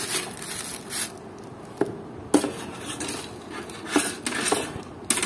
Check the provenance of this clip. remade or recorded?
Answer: recorded